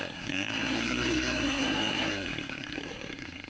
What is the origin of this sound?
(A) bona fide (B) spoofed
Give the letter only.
B